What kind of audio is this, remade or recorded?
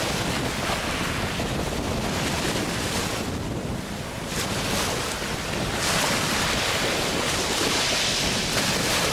recorded